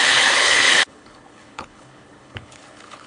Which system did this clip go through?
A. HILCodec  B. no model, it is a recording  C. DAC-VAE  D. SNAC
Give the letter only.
A